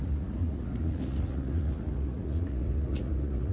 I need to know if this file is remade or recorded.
remade